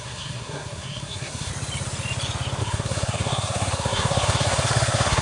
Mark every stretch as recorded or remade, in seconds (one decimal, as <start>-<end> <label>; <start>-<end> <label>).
0.0-1.5 remade; 1.5-2.6 recorded; 2.6-5.2 remade